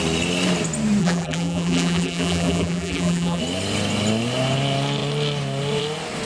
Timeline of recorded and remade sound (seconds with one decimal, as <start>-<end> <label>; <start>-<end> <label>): 0.0-1.0 recorded; 1.0-3.4 remade; 3.4-6.3 recorded